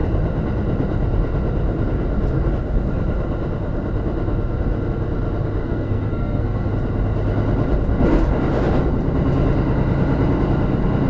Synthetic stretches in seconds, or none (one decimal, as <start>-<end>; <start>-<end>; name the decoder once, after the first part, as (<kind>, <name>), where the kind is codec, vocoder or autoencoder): 5.6-6.7 (codec, SNAC)